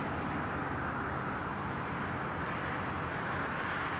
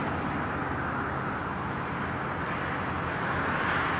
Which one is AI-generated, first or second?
first